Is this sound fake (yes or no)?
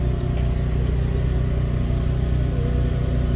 no